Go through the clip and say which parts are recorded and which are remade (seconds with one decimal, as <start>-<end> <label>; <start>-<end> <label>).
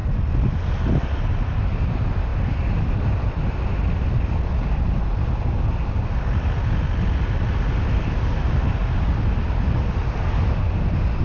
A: 0.0-11.2 recorded